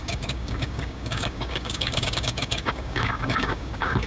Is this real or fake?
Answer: fake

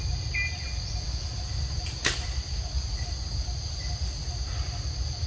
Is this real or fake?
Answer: real